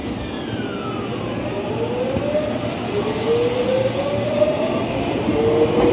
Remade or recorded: recorded